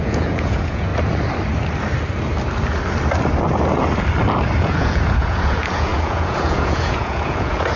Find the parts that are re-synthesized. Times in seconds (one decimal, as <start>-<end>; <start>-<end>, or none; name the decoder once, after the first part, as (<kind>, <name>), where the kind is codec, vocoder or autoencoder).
0.0-0.9 (vocoder, Vocos); 4.6-7.8